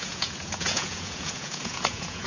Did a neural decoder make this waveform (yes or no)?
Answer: yes